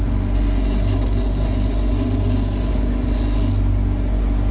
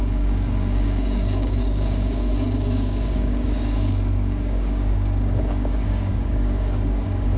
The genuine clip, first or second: first